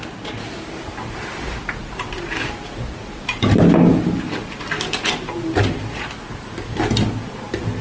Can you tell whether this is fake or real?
fake